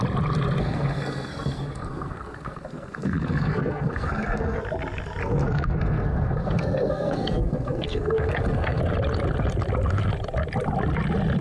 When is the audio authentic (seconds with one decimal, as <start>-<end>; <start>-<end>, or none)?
0.0-0.6; 4.6-5.2; 8.8-11.4

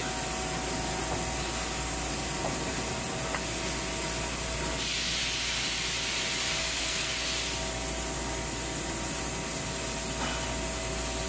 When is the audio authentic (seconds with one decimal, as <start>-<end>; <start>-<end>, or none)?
0.0-6.6; 7.1-11.3

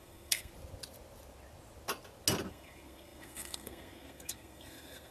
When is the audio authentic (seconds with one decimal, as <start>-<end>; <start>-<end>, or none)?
0.5-2.5

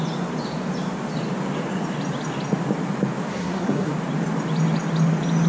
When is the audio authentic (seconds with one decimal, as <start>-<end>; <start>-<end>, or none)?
0.0-3.3; 3.9-5.5

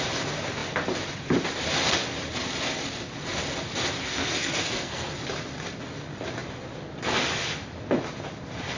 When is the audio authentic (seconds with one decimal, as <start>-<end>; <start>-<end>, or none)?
0.0-4.0; 5.1-8.8

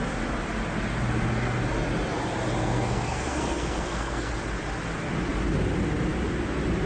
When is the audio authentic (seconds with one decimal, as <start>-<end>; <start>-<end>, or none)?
0.0-2.6; 4.3-6.9

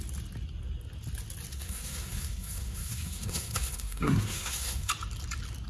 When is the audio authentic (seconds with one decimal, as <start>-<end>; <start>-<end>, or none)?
0.0-1.5; 4.9-5.7